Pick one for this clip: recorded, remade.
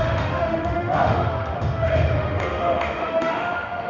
remade